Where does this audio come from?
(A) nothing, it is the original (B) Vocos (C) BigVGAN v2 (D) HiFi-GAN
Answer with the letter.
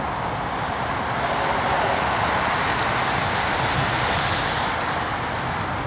A